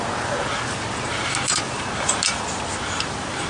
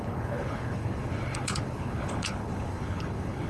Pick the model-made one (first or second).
second